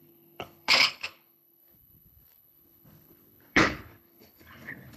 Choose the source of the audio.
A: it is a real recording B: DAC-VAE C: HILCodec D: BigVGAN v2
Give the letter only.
C